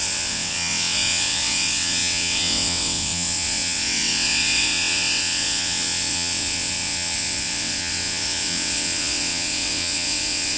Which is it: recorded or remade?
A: remade